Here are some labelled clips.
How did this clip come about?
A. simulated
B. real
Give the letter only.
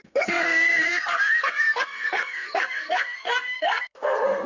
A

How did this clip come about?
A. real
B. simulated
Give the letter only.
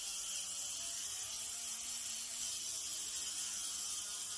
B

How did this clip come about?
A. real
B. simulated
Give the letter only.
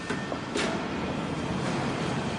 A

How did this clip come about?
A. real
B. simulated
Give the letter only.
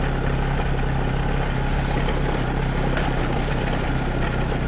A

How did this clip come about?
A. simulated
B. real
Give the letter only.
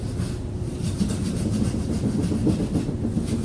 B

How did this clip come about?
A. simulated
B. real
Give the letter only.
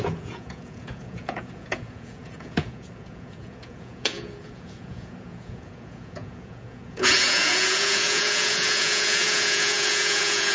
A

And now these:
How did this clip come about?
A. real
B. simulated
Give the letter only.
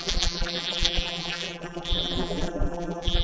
B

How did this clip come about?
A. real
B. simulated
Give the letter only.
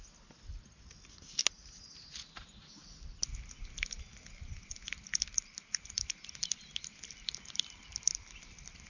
A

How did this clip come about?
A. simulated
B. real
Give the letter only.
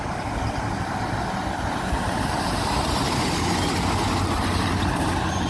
B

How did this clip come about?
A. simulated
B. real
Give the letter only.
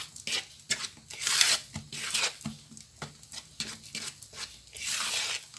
B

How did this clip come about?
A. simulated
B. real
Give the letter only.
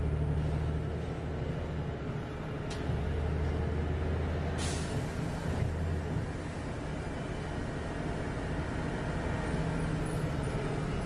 B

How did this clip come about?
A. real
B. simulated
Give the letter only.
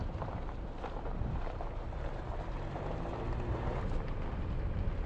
A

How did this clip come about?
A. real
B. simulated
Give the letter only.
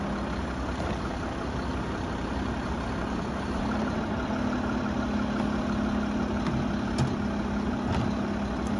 A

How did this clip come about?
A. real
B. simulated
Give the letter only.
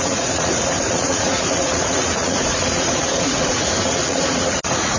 B